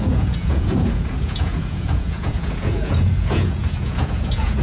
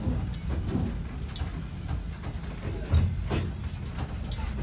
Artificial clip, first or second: first